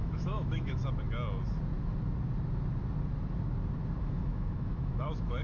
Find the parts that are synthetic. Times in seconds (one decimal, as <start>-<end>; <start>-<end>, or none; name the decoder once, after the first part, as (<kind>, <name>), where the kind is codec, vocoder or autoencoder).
0.0-0.8 (autoencoder, DAC-VAE); 4.0-5.4